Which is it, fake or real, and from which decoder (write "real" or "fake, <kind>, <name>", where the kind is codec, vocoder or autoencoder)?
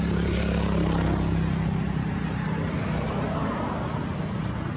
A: real